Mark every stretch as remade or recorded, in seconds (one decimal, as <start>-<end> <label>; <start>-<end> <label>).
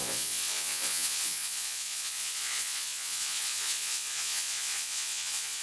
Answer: 0.0-5.6 remade